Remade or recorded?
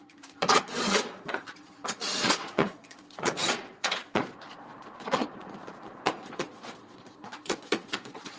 remade